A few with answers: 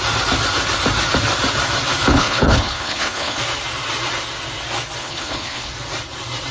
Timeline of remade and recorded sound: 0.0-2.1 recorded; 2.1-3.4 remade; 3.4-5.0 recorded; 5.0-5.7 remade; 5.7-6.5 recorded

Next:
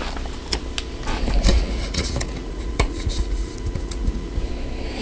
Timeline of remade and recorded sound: 0.0-1.5 recorded; 1.5-4.5 remade; 4.5-5.0 recorded

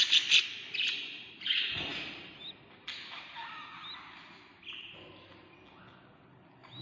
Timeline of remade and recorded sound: 0.0-6.8 recorded

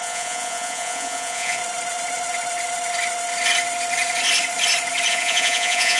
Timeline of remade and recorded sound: 0.0-1.6 remade; 1.6-5.1 recorded; 5.1-6.0 remade

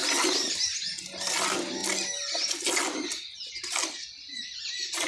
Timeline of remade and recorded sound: 0.0-0.9 recorded; 0.9-1.8 remade; 1.8-3.5 recorded; 3.5-5.1 remade

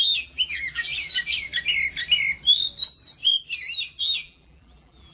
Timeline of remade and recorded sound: 0.0-0.9 remade; 0.9-4.0 recorded; 4.0-5.1 remade

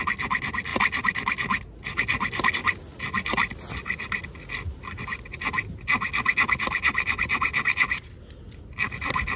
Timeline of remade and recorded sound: 0.0-9.4 recorded